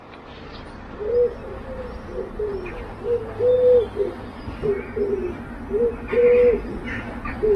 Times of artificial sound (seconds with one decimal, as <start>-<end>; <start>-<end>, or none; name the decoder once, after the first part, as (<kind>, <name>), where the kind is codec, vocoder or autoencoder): none